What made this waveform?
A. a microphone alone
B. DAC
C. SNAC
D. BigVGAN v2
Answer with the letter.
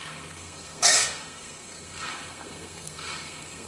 C